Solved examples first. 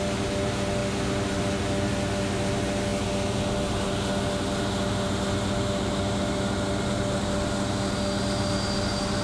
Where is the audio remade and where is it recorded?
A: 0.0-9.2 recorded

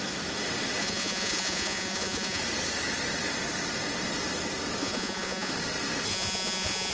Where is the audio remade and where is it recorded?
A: 0.0-0.8 recorded; 0.8-2.4 remade; 2.4-4.8 recorded; 4.8-5.5 remade; 5.5-6.1 recorded; 6.1-6.9 remade

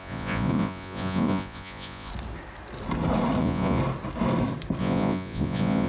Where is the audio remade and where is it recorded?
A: 0.0-2.1 remade; 2.1-3.4 recorded; 3.4-3.8 remade; 3.8-4.8 recorded; 4.8-5.9 remade

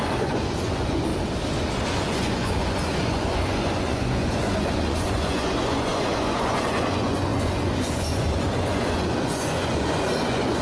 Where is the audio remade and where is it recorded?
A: 0.0-1.1 remade; 1.1-1.9 recorded; 1.9-10.6 remade